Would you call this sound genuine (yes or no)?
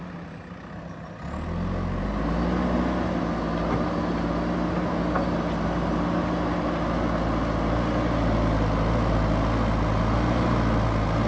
yes